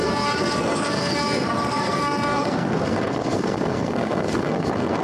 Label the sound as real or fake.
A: fake